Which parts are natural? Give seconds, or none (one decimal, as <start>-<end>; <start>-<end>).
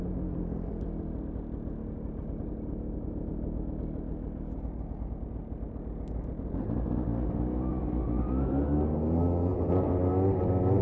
0.0-10.8